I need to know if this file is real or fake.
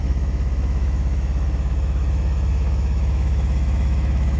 fake